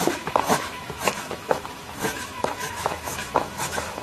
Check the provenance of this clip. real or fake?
fake